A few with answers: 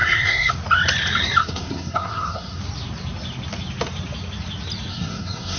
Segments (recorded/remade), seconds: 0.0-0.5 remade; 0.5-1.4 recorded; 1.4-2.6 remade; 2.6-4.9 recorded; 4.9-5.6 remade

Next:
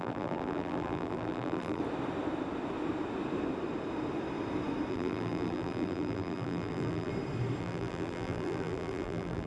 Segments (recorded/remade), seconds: 0.0-1.8 remade; 1.8-4.9 recorded; 4.9-7.1 remade; 7.1-7.6 recorded; 7.6-9.5 remade

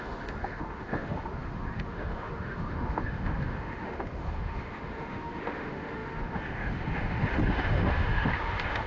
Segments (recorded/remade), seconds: 0.0-8.9 remade

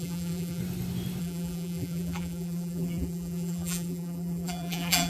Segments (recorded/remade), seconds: 0.0-0.6 remade; 0.6-1.2 recorded; 1.2-5.1 remade

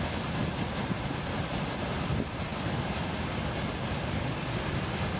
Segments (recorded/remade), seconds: 0.0-5.2 recorded

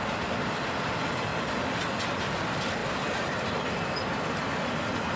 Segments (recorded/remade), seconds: 0.0-5.2 recorded

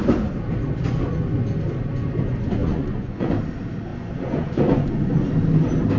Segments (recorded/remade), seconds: 0.0-2.6 recorded; 2.6-3.3 remade; 3.3-3.9 recorded; 3.9-5.3 remade; 5.3-6.0 recorded